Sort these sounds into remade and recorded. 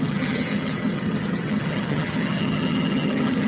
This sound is remade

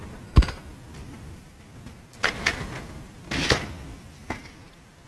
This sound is recorded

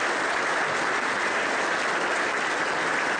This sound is recorded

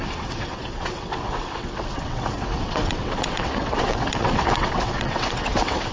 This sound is remade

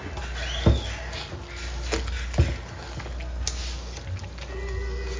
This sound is recorded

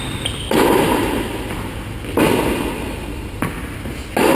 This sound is recorded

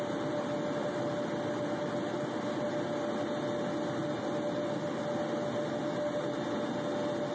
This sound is recorded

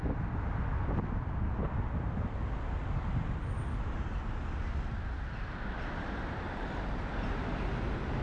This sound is recorded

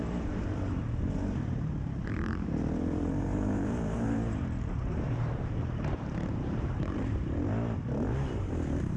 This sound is remade